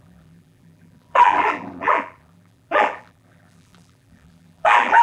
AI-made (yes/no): yes